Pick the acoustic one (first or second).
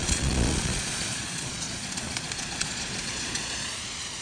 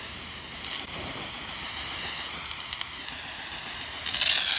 second